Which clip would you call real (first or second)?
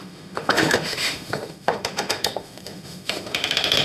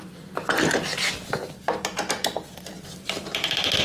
second